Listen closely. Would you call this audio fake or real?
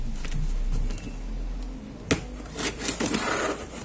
real